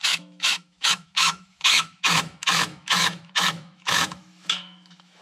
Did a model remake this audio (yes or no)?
yes